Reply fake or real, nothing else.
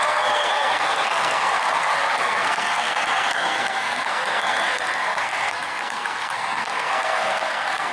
fake